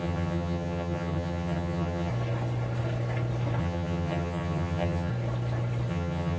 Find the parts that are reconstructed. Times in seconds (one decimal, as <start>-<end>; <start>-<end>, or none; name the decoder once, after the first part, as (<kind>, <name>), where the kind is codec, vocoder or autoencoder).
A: 0.0-2.1 (vocoder, HiFi-GAN); 3.6-5.1; 5.9-6.4

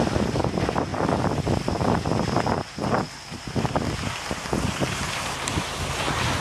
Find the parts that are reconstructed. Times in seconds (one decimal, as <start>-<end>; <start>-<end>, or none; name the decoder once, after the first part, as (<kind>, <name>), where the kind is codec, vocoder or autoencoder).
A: none

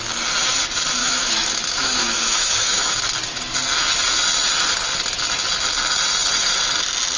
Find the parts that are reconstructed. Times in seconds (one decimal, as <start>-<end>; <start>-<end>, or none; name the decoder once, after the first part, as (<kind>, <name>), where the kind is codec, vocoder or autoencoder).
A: 1.0-3.0 (autoencoder, DAC-VAE)

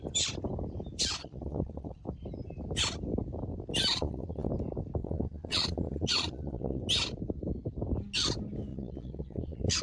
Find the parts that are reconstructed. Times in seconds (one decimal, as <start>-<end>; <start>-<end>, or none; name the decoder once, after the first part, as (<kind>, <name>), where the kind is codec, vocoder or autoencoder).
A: 1.2-2.0 (vocoder, Vocos); 3.9-4.5; 5.0-6.8; 8.7-9.8

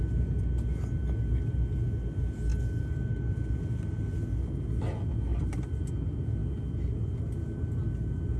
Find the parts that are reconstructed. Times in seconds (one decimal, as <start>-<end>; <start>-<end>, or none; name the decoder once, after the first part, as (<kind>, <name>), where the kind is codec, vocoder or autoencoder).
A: 5.3-5.9 (vocoder, BigVGAN v2)